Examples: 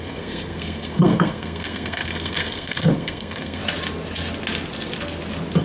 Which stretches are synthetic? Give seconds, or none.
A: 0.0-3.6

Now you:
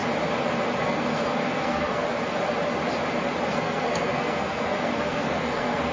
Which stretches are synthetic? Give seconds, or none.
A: 0.8-2.1; 3.5-5.9